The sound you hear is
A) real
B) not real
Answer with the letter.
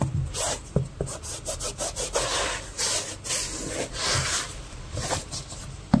A